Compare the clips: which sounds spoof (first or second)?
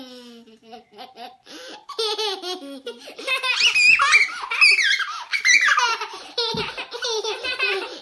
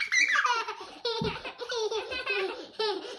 second